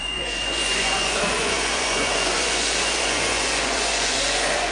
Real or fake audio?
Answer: fake